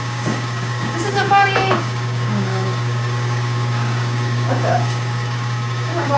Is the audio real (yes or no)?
no